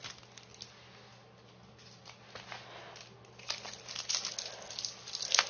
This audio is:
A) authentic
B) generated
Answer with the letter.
A